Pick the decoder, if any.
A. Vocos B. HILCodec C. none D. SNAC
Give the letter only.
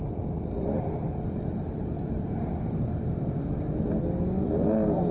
C